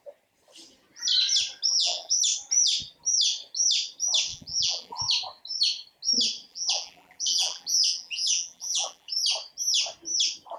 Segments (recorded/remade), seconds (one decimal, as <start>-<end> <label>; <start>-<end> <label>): 0.0-1.7 recorded; 1.7-2.2 remade; 2.2-4.3 recorded; 4.3-5.0 remade; 5.0-6.5 recorded; 6.5-9.1 remade; 9.1-10.6 recorded